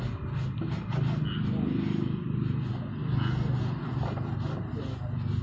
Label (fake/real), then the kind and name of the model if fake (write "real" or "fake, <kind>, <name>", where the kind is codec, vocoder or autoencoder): real